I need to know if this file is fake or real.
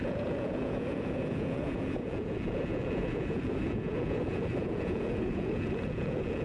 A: fake